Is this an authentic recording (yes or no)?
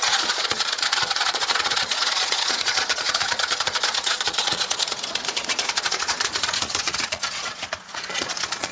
no